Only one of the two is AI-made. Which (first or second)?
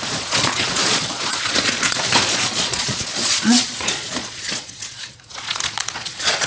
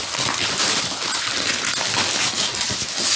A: first